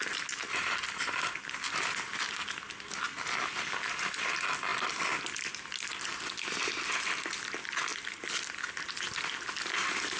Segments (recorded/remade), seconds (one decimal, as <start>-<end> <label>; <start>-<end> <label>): 0.0-10.2 recorded